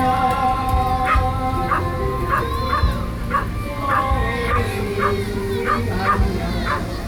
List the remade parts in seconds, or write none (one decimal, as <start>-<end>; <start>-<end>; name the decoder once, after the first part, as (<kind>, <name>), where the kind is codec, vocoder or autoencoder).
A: 4.0-4.9 (codec, DAC)